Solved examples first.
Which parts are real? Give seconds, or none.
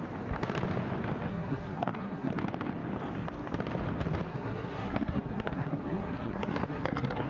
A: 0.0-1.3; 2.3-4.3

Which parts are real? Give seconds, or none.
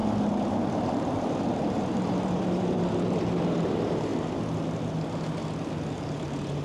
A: 0.0-0.7; 4.1-5.9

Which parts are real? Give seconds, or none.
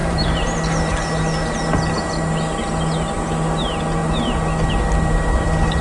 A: 0.8-5.8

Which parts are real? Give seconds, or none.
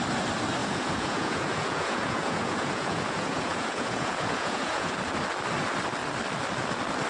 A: 0.0-0.6; 4.9-7.1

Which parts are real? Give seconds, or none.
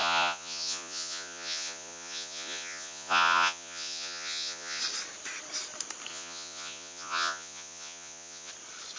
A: 4.8-6.1; 8.5-9.0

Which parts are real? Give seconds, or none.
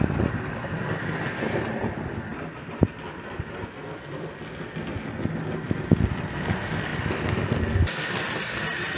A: 0.0-9.0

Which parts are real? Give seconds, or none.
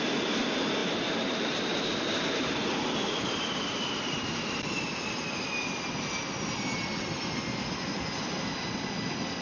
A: 0.0-0.8; 4.8-9.4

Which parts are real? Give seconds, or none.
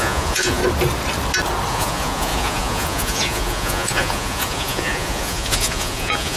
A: 0.6-1.7